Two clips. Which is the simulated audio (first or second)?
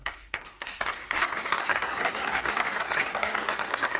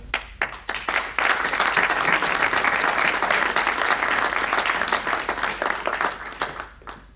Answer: first